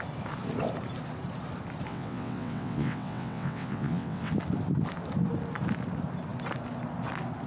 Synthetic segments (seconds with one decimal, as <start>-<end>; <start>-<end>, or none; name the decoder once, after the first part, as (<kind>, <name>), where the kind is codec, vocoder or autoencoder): 1.9-4.3 (vocoder, WaveNeXt)

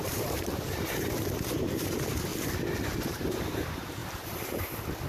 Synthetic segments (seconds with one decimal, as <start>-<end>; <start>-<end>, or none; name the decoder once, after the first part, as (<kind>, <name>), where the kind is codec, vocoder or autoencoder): 0.0-2.3 (vocoder, BigVGAN v2); 3.0-4.0

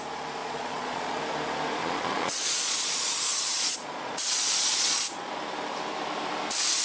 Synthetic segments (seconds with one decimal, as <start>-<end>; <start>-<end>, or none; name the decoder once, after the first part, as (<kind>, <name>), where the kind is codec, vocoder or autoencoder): 0.4-1.2 (vocoder, Vocos); 1.8-5.3

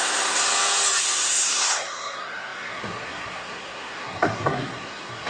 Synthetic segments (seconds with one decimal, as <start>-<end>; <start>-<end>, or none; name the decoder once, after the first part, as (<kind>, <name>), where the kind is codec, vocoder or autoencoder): 0.0-0.4 (codec, SNAC); 1.0-5.3

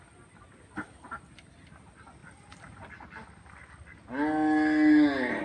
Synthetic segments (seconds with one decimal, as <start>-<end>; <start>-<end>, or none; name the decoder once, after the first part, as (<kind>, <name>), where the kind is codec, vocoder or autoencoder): none

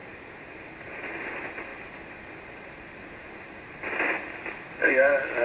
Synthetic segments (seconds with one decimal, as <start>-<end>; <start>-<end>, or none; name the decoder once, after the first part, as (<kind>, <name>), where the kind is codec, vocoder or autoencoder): 0.0-0.6 (vocoder, BigVGAN v2)